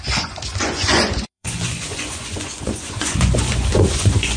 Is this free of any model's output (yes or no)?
no